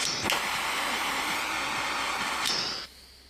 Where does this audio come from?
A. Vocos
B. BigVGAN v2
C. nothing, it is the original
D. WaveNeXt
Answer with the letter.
C